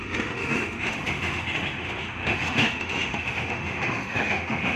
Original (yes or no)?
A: no